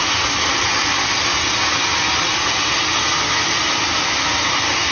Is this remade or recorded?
recorded